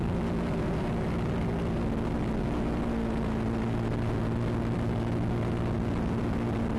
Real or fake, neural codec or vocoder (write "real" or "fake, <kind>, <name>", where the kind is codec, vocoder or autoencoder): real